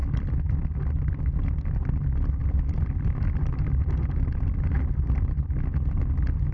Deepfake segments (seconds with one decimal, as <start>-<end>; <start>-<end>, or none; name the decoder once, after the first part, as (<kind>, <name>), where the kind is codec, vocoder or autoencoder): 2.4-4.5 (vocoder, BigVGAN v2)